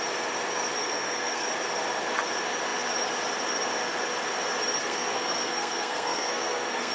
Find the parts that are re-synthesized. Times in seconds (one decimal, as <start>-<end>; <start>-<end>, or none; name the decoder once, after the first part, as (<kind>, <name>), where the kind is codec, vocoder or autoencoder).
0.8-1.5 (codec, SNAC); 4.8-6.9